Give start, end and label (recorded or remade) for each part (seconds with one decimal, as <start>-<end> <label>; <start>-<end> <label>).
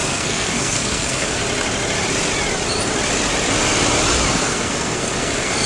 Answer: 0.0-1.4 remade; 1.4-4.3 recorded; 4.3-5.7 remade